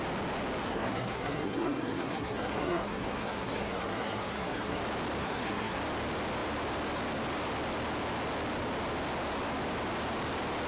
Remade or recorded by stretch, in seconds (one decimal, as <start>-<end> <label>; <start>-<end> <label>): 0.0-0.6 recorded; 0.6-4.8 remade; 4.8-5.2 recorded; 5.2-5.8 remade; 5.8-10.7 recorded